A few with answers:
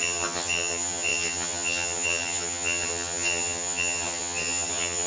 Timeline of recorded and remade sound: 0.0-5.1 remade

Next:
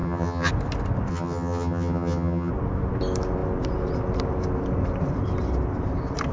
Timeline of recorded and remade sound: 0.0-0.5 remade; 0.5-1.1 recorded; 1.1-2.5 remade; 2.5-6.3 recorded

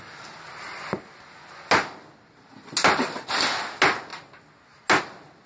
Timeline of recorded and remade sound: 0.0-5.5 recorded